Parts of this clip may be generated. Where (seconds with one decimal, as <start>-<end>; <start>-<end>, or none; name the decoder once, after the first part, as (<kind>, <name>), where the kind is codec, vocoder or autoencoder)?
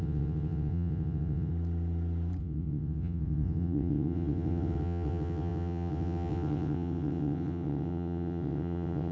0.0-1.5 (vocoder, WaveNeXt); 2.4-9.1